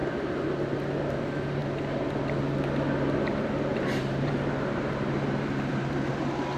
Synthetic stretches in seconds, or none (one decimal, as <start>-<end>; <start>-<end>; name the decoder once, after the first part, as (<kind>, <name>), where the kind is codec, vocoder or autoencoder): 3.7-6.1 (vocoder, BigVGAN v2)